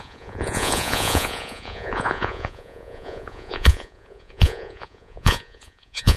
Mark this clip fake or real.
fake